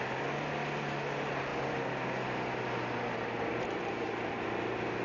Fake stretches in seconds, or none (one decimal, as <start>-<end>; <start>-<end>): none